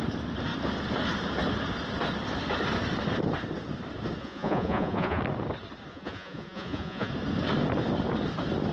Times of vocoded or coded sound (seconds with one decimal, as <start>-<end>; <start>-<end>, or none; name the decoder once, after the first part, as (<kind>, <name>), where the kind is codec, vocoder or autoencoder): 4.2-5.2 (vocoder, Vocos); 5.9-7.1